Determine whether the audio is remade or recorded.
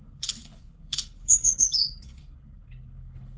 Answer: remade